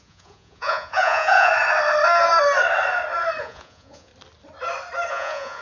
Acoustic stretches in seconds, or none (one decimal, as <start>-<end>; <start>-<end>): 1.5-3.4; 4.1-5.1

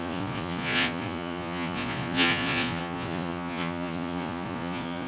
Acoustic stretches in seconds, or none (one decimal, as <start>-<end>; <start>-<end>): none

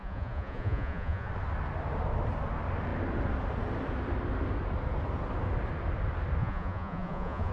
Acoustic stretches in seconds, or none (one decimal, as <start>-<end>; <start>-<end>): 1.3-6.4